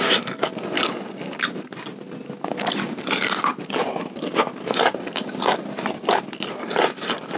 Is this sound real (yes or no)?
yes